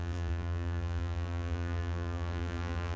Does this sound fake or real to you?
fake